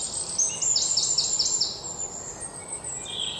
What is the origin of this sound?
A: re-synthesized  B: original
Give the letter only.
B